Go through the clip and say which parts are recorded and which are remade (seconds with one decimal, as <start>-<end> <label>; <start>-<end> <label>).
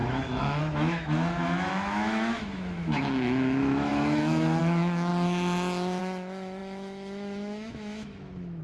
0.0-5.1 remade; 5.1-6.0 recorded; 6.0-8.6 remade